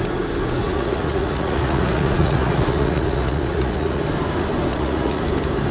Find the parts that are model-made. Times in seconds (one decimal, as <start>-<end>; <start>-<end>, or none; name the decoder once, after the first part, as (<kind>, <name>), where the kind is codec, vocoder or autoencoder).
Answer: 0.6-4.0 (vocoder, Vocos); 4.7-5.2